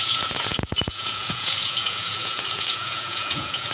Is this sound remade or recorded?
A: remade